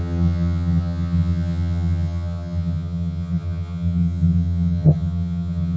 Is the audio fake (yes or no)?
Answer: yes